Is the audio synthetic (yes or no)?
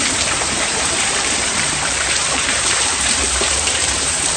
yes